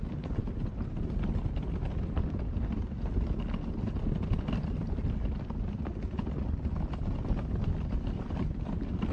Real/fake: real